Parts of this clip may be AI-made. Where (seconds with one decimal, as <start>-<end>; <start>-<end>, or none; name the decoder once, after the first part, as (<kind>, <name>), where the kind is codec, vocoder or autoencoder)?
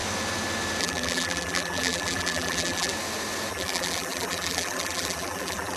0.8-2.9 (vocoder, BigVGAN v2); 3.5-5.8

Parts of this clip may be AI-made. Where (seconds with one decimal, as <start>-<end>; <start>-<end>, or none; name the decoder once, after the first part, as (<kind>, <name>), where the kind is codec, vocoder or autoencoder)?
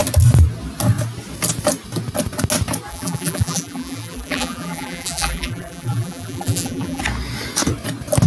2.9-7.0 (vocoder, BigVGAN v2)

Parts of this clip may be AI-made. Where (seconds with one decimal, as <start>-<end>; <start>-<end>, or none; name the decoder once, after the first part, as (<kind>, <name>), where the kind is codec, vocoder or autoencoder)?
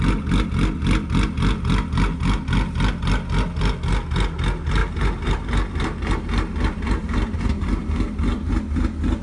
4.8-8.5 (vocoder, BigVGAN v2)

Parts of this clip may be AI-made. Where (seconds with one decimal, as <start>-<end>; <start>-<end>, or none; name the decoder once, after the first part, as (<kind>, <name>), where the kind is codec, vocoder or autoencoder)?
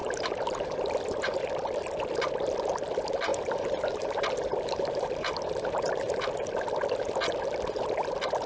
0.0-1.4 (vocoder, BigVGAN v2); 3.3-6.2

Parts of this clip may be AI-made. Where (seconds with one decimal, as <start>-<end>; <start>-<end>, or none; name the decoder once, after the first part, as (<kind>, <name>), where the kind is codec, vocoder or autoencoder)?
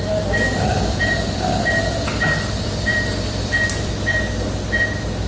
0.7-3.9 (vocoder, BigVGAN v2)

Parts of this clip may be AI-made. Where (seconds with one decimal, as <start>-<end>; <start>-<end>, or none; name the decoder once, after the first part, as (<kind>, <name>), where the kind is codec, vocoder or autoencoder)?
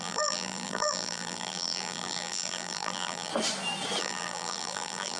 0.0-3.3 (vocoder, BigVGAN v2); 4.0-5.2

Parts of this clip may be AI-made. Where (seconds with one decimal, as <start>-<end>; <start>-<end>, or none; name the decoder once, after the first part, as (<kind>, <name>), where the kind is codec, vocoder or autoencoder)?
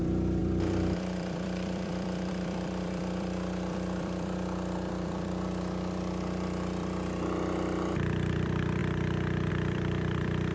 0.0-8.8 (vocoder, BigVGAN v2); 9.5-10.5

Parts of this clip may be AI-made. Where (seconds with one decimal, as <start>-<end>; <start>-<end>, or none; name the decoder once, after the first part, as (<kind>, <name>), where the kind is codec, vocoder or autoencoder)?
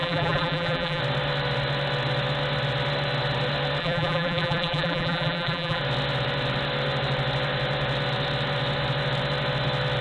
0.0-1.0 (vocoder, BigVGAN v2); 3.8-5.8